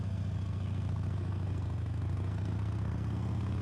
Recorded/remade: remade